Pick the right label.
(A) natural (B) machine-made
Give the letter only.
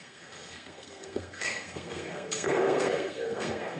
B